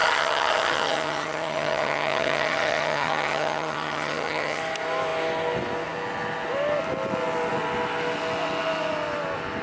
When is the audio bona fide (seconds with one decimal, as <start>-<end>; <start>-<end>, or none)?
4.6-9.6